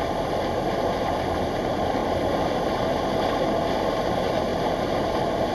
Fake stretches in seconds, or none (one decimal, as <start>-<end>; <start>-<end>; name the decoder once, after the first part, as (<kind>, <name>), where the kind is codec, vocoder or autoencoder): none